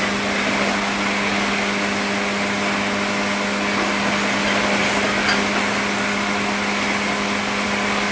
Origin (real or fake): real